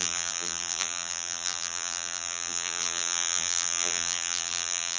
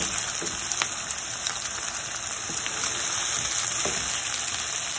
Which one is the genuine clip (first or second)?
second